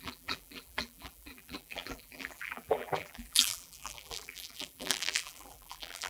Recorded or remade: remade